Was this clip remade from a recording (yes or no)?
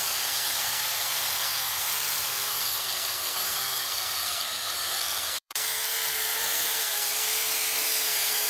yes